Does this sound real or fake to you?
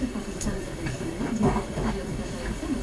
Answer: fake